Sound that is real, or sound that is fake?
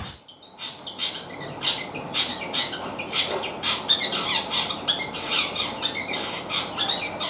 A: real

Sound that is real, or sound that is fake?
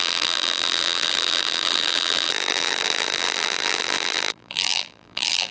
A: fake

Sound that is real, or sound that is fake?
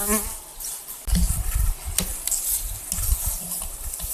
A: real